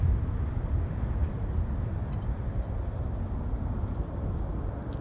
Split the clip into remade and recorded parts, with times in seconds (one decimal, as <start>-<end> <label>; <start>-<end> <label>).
0.0-5.0 recorded